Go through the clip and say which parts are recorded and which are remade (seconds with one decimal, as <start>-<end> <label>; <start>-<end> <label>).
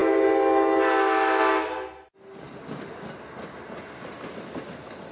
0.0-5.1 recorded